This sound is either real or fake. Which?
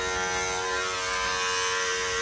real